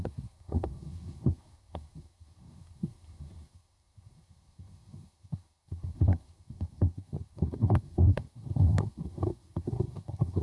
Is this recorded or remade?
remade